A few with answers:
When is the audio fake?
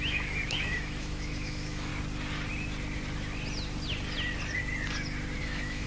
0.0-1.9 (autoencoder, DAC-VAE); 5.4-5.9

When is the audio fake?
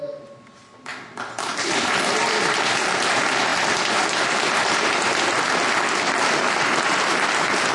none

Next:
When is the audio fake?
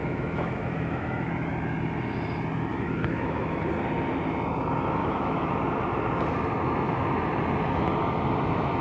0.0-1.3 (autoencoder, DAC-VAE); 2.7-3.6; 5.0-5.5